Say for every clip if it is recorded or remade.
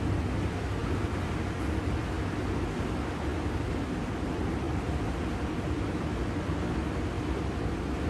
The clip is recorded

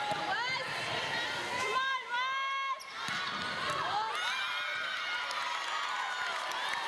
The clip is recorded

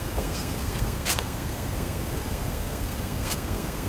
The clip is remade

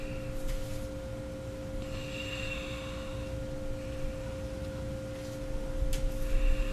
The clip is recorded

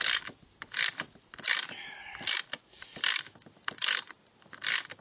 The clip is recorded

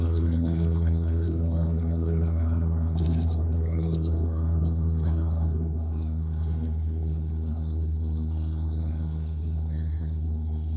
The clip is remade